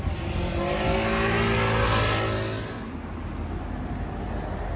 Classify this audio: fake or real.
real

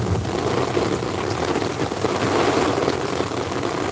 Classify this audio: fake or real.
real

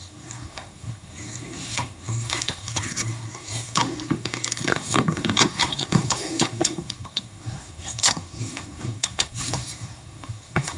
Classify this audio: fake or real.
fake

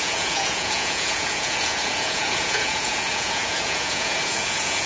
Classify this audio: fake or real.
fake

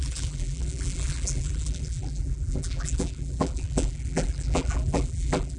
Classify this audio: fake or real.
fake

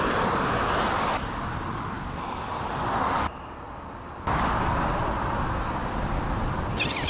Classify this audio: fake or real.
real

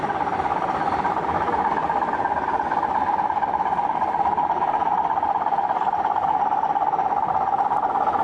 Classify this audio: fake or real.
real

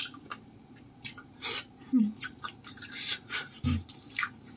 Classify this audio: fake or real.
fake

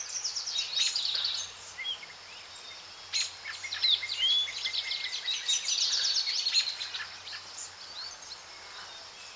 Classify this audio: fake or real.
real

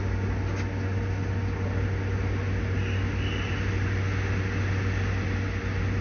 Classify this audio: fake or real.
real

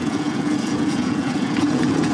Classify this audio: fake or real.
fake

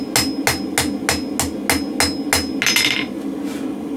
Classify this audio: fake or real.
real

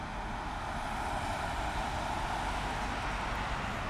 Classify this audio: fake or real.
real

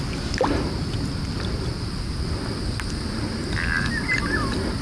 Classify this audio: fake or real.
real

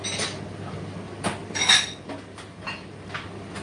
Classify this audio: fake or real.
real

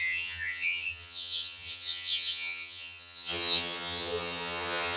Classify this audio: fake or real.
fake